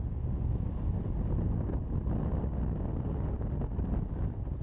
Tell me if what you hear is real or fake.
real